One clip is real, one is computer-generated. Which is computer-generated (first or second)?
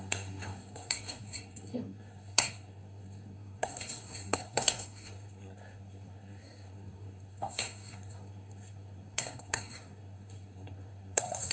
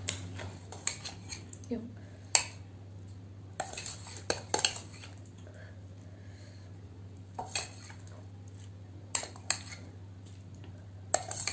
first